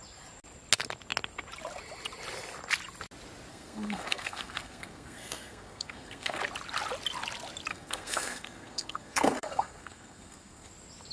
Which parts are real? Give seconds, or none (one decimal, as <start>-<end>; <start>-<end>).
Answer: 0.0-3.5; 6.4-7.7; 10.7-11.1